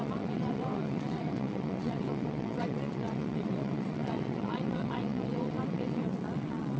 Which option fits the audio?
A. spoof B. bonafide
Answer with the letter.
A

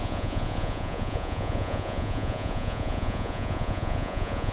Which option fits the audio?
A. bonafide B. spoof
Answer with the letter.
B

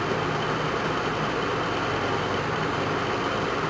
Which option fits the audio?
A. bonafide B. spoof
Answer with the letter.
A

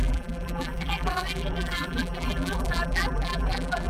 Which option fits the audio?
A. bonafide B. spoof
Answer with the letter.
B